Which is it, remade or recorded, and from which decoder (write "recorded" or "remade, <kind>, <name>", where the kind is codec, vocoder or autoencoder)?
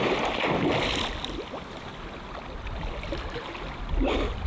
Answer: recorded